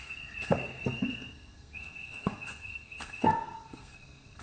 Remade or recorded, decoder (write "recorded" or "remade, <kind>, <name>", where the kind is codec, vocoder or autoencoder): remade, codec, SNAC